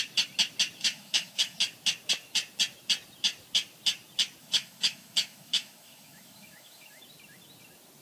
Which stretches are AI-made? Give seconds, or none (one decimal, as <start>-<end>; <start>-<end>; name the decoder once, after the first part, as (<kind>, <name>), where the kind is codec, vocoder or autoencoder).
0.8-1.6 (autoencoder, DAC-VAE); 4.4-7.0